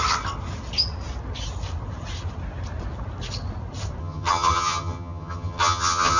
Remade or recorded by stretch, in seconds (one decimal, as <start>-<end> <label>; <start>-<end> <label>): 0.0-4.0 recorded; 4.0-6.2 remade